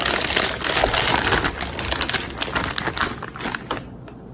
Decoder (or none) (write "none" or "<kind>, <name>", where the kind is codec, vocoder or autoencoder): none